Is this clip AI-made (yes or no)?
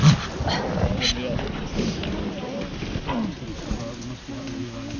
no